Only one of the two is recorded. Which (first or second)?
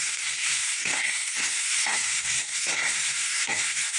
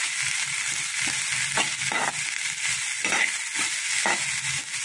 second